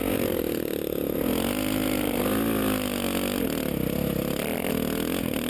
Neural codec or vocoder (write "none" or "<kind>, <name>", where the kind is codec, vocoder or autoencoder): none